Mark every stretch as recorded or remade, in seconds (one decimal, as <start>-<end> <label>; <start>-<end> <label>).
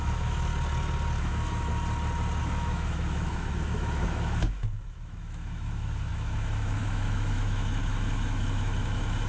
0.0-0.5 remade; 0.5-1.2 recorded; 1.2-1.7 remade; 1.7-2.4 recorded; 2.4-9.3 remade